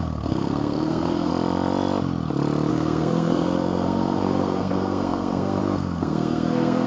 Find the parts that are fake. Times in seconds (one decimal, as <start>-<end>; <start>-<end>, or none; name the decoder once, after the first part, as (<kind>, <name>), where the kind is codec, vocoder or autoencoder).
0.0-1.3 (codec, SNAC); 2.7-6.9